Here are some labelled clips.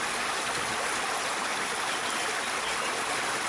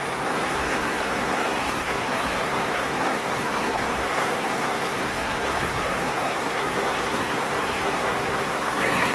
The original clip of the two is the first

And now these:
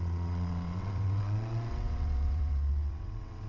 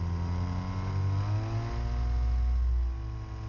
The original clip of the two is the second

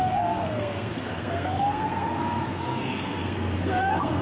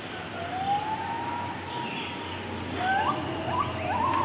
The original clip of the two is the second